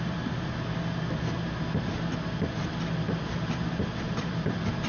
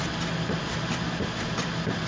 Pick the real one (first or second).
second